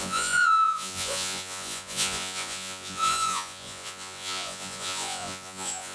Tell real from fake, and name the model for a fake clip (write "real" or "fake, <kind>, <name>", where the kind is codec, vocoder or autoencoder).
fake, vocoder, Vocos